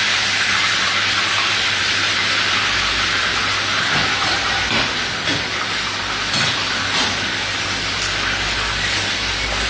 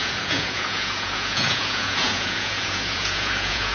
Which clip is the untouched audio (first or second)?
first